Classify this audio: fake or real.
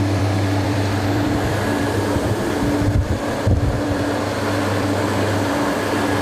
fake